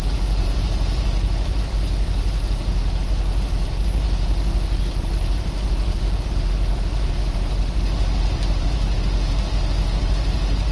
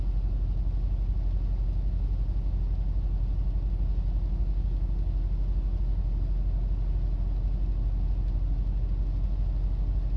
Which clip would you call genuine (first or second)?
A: second